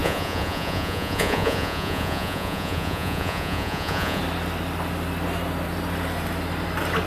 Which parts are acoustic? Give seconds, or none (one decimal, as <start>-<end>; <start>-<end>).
4.2-7.1